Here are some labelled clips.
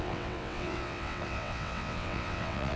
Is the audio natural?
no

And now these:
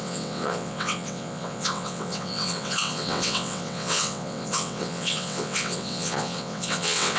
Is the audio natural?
no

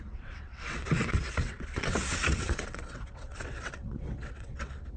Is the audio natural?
no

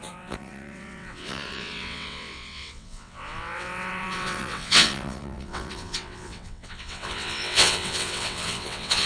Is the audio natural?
no